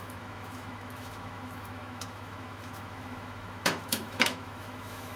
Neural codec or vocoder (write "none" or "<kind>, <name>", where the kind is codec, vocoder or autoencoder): autoencoder, DAC-VAE